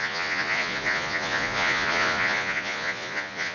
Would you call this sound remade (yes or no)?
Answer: yes